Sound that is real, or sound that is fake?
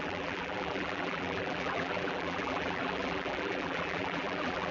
fake